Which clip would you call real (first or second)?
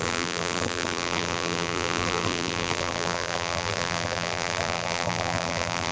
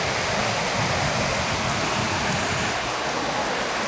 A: second